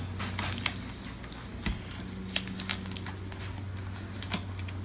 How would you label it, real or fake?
real